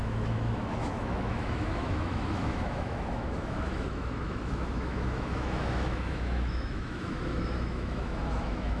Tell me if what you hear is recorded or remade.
remade